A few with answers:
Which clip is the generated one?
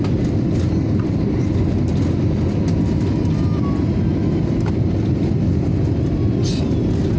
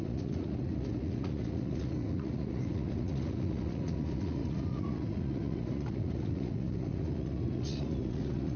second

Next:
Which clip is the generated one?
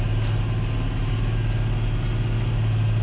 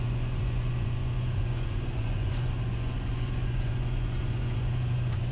second